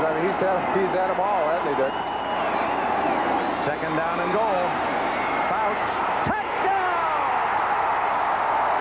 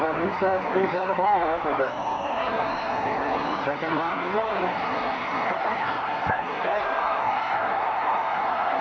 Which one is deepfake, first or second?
second